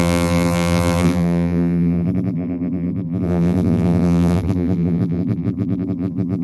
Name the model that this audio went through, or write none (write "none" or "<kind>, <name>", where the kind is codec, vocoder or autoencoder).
vocoder, BigVGAN v2